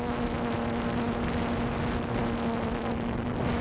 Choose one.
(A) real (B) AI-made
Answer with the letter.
A